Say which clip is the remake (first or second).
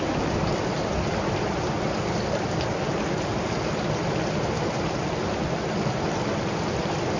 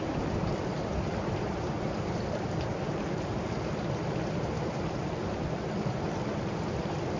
second